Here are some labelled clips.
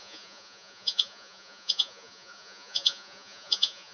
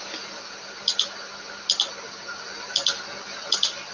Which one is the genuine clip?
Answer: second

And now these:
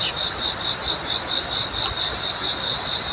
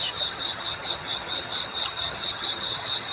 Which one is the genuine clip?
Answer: first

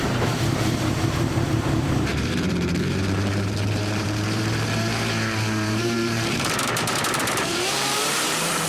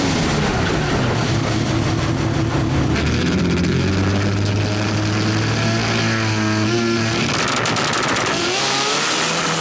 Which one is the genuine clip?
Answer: second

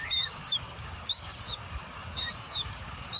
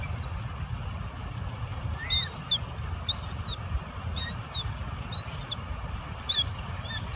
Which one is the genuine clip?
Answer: second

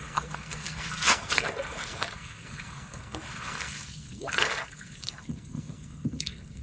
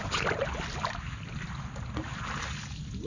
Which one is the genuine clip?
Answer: second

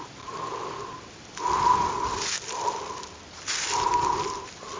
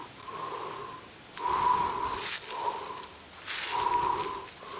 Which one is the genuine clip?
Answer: second